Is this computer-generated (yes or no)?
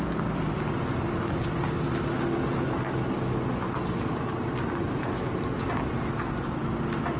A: no